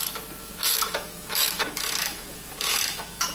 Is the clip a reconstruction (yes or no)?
yes